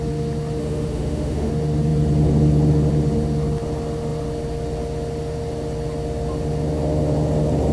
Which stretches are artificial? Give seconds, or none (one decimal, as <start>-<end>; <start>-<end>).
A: 0.6-1.5